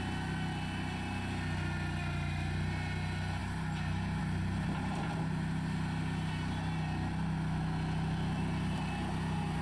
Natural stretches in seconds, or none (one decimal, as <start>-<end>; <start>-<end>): 0.0-9.6